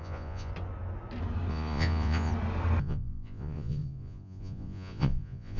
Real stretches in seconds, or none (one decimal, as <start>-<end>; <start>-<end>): 0.5-1.5; 2.3-2.8